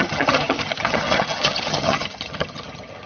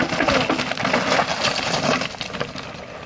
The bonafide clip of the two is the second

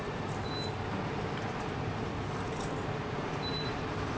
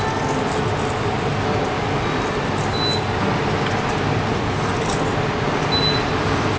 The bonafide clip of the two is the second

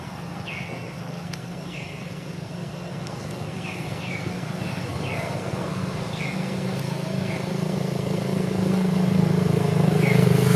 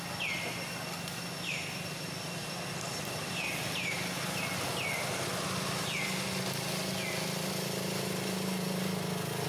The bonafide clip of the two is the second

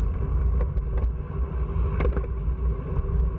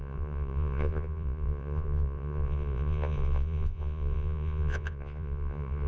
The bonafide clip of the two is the first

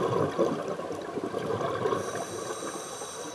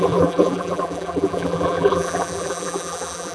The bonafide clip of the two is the first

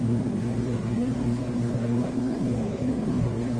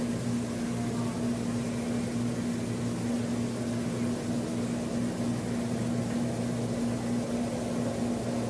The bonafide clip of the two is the second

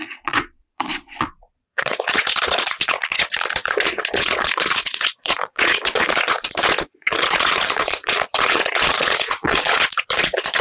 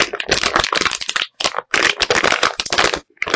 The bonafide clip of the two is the second